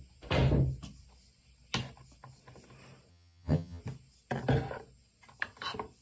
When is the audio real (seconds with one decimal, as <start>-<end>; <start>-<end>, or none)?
0.0-3.1; 3.8-6.0